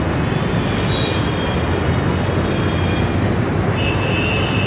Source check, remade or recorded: recorded